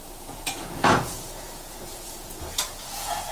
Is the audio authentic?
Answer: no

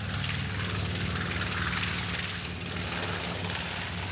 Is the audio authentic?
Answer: yes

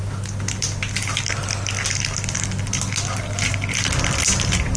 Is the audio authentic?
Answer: yes